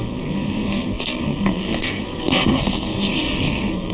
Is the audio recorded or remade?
remade